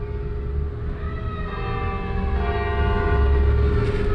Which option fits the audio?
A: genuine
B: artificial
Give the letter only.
A